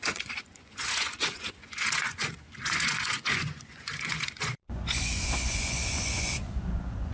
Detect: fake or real fake